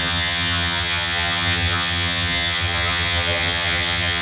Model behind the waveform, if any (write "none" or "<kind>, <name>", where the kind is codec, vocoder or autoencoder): vocoder, HiFi-GAN